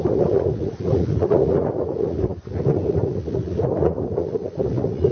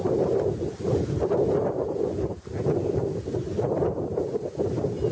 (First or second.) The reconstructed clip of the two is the first